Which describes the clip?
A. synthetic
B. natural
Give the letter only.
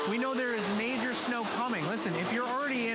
A